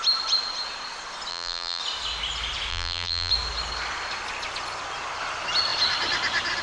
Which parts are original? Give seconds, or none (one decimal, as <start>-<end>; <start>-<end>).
0.0-1.3; 1.8-2.7; 3.3-6.6